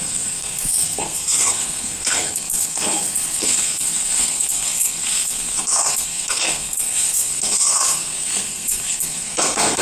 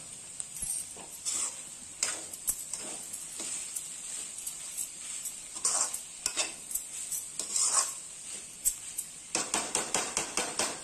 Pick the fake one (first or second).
first